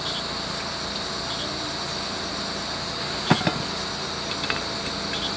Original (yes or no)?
yes